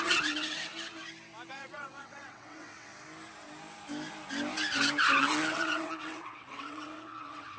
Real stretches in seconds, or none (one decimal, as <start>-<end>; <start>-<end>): 0.7-1.5; 2.9-5.2